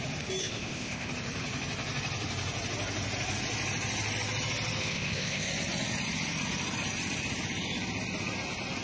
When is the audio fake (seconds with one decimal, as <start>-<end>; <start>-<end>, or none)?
0.4-1.1; 4.8-5.5